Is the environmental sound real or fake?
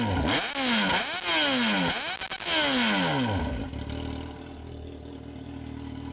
real